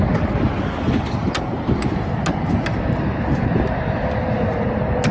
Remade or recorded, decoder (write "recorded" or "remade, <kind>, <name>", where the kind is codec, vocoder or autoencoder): recorded